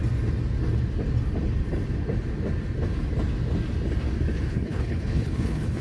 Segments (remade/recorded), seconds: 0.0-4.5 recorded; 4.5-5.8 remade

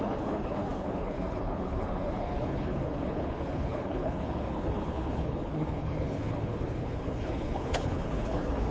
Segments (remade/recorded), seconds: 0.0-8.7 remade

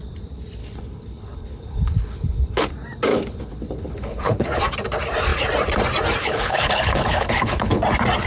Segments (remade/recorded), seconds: 0.0-0.6 recorded; 0.6-2.7 remade; 2.7-3.1 recorded; 3.1-4.5 remade; 4.5-6.2 recorded; 6.2-7.8 remade; 7.8-8.3 recorded

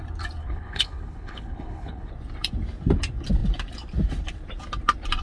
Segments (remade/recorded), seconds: 0.0-0.4 recorded; 0.4-2.1 remade; 2.1-5.2 recorded